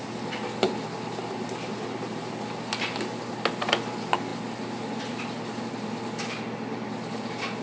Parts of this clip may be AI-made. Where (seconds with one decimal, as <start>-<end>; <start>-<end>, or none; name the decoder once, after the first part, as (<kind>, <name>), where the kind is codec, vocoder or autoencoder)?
none